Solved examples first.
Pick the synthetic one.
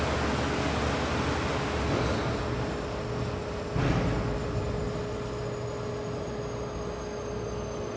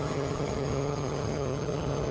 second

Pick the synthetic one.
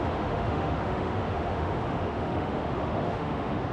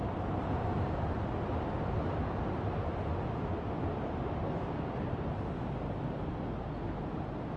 first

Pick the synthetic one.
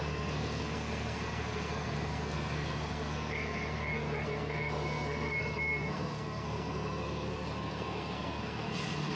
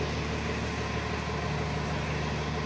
first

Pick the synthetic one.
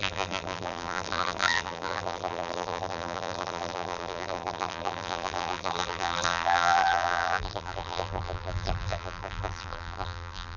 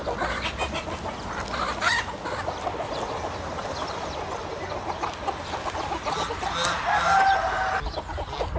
first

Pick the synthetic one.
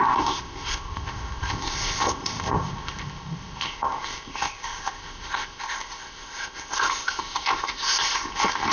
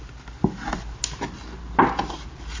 first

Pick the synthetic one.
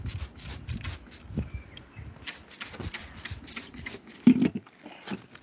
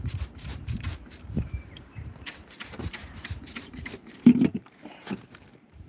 second